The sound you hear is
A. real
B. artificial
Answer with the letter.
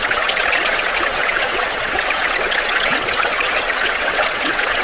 B